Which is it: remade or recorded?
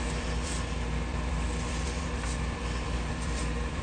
remade